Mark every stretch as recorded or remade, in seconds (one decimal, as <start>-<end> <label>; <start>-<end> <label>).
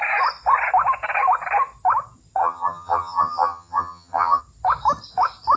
0.0-2.4 recorded; 2.4-4.4 remade; 4.4-5.6 recorded